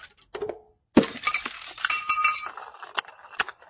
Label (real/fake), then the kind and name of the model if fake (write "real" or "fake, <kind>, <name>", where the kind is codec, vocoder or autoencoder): real